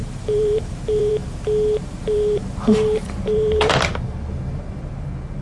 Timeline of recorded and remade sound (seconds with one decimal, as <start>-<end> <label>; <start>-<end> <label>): 0.0-1.1 remade; 1.1-2.0 recorded; 2.0-3.9 remade; 3.9-5.4 recorded